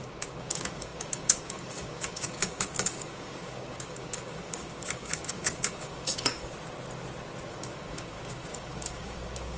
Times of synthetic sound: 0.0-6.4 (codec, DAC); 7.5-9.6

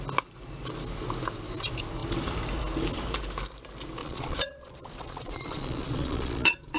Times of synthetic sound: 4.0-6.8 (vocoder, Vocos)

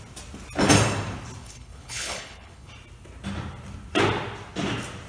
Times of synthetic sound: 1.4-2.7 (codec, HILCodec)

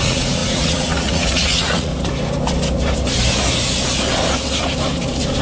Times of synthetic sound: 0.0-1.9 (vocoder, Vocos)

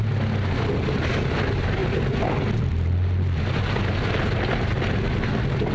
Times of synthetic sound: none